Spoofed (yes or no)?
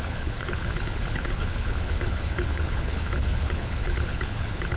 yes